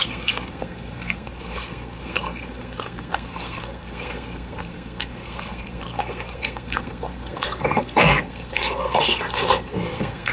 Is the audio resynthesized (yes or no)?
yes